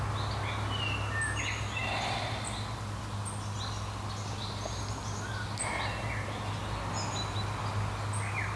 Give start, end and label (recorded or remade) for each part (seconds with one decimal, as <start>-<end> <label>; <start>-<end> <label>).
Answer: 0.0-8.6 recorded